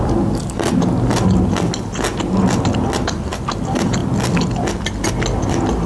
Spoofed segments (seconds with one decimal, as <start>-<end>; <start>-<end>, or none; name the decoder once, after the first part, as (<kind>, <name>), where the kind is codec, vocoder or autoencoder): none